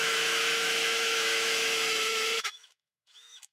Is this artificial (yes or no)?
yes